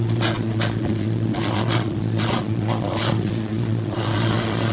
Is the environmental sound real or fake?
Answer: fake